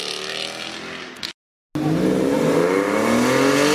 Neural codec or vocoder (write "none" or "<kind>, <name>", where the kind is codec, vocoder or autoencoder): none